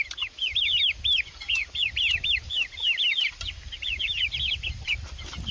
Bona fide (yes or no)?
no